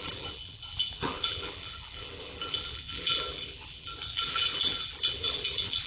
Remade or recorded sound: remade